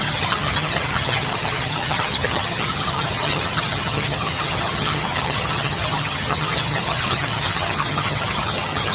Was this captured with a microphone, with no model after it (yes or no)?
no